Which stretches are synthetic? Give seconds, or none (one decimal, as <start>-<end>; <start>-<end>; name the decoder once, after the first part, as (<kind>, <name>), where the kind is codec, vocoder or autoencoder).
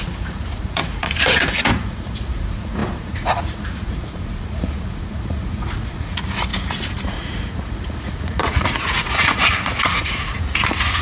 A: 0.0-6.5 (vocoder, Vocos); 7.1-11.0